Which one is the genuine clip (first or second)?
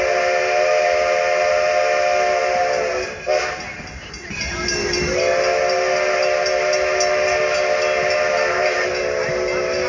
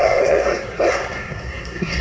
first